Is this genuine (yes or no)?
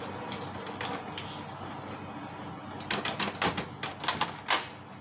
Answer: yes